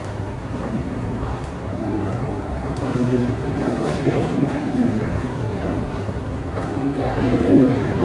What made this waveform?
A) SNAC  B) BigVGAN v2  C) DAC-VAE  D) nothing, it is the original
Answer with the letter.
A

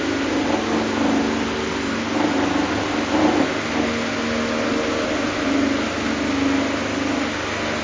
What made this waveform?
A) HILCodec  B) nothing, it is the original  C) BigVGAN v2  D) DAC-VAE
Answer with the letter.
B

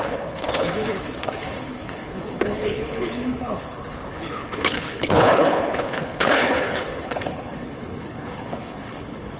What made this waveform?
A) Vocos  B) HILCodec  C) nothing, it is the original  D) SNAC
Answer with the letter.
B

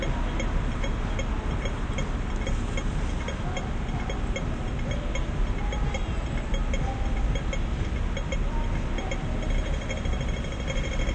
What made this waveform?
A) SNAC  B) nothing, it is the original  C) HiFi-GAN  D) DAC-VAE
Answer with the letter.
B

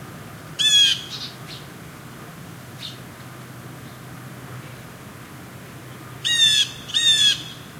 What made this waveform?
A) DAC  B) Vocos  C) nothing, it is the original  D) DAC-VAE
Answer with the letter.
C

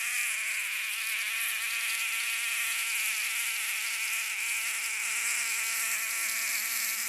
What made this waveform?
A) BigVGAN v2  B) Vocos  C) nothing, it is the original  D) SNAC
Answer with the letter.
C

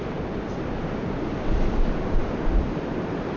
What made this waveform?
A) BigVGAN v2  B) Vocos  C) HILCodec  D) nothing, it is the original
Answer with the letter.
D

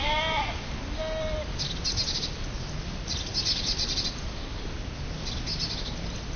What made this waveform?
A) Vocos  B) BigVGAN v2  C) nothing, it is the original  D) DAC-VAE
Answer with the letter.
C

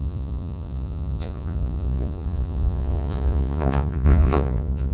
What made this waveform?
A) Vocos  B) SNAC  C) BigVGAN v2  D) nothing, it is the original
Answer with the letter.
A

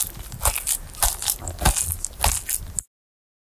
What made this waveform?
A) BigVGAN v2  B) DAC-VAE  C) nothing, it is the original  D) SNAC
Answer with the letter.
C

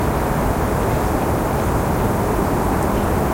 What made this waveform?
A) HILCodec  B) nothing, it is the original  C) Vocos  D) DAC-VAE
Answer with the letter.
B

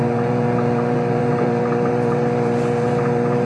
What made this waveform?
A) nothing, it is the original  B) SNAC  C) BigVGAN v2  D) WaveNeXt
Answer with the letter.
C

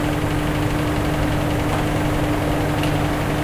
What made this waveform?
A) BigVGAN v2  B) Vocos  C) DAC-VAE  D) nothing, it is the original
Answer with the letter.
D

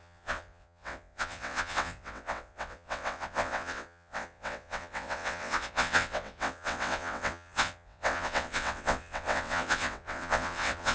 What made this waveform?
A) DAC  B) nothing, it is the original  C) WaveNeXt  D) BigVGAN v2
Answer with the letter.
C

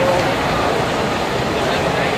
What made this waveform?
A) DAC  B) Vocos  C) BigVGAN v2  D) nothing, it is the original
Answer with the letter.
D